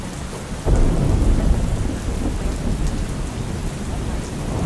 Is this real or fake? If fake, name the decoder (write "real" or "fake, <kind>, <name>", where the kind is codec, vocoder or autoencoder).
real